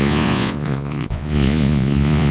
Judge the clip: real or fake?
fake